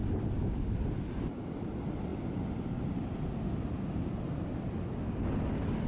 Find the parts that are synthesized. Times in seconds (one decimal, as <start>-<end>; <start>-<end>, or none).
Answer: 0.0-1.2